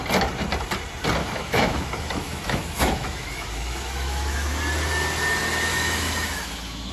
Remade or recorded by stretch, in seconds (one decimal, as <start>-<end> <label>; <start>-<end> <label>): 0.0-1.2 recorded; 1.2-4.6 remade; 4.6-5.7 recorded; 5.7-6.9 remade